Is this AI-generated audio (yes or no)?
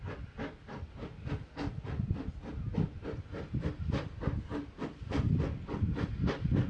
no